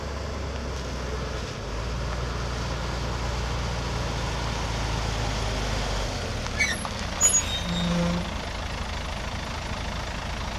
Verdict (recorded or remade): recorded